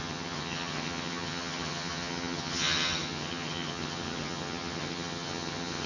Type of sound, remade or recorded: remade